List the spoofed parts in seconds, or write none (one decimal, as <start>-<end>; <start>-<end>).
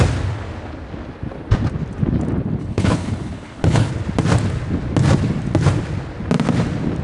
2.6-3.9